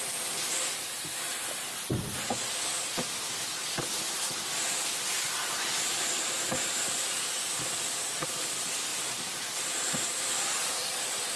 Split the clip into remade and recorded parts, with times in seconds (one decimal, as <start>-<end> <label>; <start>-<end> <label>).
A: 0.0-11.4 recorded

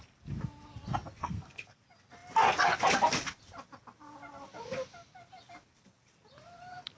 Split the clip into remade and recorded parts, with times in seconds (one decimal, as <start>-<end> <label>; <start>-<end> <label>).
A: 0.0-1.2 recorded; 1.2-1.8 remade; 1.8-7.0 recorded